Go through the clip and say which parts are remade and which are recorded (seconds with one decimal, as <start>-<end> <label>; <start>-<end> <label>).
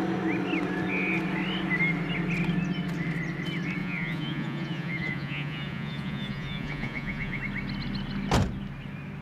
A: 0.0-3.8 recorded; 3.8-7.4 remade; 7.4-9.2 recorded